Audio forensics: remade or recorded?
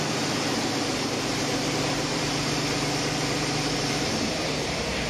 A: remade